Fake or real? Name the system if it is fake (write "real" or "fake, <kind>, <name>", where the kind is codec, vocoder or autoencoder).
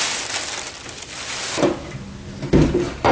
real